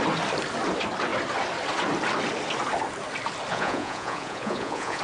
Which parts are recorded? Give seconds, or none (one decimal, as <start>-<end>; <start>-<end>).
0.0-3.5